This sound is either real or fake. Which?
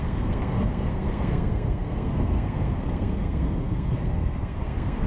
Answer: fake